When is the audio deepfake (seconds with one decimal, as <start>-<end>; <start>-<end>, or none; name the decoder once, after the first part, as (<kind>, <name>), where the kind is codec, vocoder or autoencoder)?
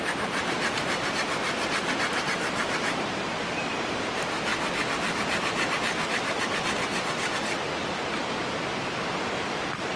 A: 0.0-4.5 (vocoder, BigVGAN v2); 9.2-10.0